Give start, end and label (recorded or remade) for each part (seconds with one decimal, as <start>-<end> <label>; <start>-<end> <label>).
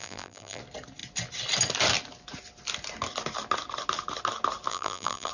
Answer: 0.0-0.6 remade; 0.6-4.7 recorded; 4.7-5.3 remade